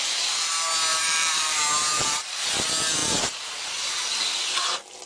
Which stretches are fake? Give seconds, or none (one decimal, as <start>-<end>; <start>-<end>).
0.9-1.6